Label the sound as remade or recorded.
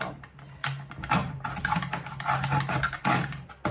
recorded